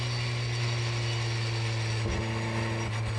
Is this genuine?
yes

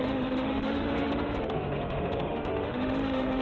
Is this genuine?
no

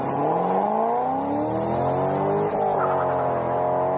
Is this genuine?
yes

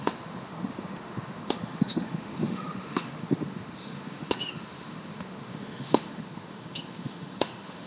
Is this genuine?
no